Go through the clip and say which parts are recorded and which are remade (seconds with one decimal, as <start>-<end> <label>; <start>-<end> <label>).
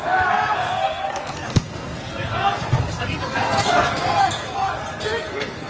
0.0-5.7 remade